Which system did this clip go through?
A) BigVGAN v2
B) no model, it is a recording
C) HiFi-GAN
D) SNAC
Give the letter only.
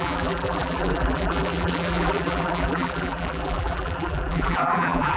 A